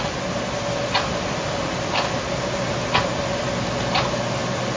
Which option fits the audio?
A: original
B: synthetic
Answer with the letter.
A